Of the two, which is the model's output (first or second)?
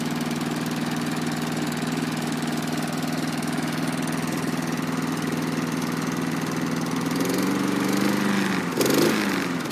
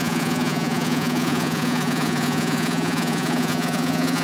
second